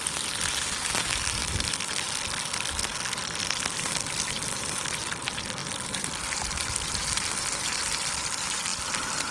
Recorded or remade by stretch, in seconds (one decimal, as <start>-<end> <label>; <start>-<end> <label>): 0.0-9.3 recorded